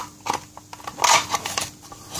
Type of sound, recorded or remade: recorded